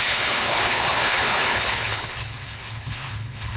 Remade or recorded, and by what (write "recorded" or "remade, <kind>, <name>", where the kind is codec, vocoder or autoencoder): remade, codec, HILCodec